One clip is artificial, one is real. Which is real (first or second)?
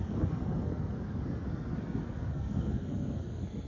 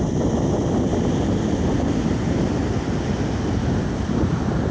second